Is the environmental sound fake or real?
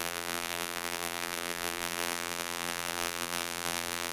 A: fake